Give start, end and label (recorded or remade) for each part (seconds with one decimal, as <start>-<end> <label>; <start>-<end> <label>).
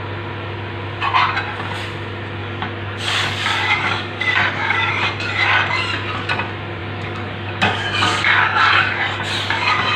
0.0-2.4 recorded; 2.4-4.9 remade; 4.9-6.8 recorded; 6.8-10.0 remade